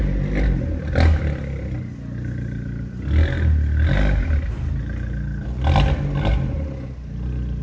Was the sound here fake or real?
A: real